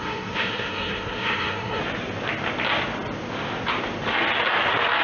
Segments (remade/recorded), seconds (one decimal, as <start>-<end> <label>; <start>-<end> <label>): 0.0-1.8 remade; 1.8-5.0 recorded